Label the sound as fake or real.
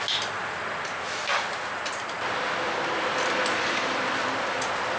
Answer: real